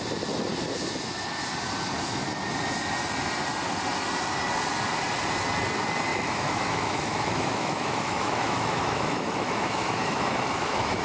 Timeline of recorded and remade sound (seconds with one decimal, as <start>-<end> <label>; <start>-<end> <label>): 0.0-6.1 recorded; 6.1-11.0 remade